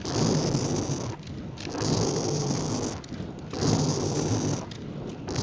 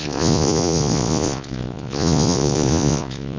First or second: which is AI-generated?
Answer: second